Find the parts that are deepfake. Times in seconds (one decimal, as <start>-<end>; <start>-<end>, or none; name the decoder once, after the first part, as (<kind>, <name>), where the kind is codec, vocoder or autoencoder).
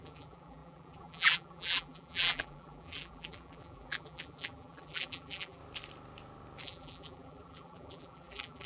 0.0-5.6 (vocoder, BigVGAN v2); 6.6-8.7